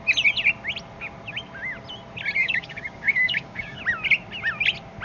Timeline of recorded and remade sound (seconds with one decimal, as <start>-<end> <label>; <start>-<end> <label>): 0.0-2.4 recorded; 2.4-3.8 remade; 3.8-5.0 recorded